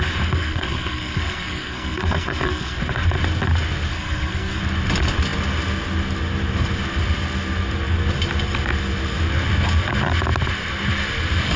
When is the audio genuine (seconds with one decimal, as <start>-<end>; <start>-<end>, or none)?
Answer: 0.0-0.4; 2.8-3.9; 4.6-11.6